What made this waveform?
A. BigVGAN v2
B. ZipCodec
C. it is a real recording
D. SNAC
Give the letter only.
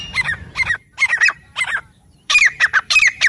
A